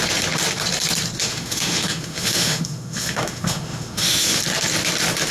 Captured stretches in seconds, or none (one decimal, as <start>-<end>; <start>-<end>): 0.0-1.2; 4.4-5.3